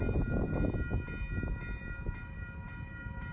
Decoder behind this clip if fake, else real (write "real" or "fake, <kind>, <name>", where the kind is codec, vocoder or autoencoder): real